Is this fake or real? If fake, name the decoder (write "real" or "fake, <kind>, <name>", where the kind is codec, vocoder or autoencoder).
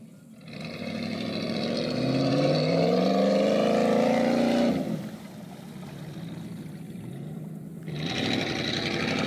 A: fake, vocoder, BigVGAN v2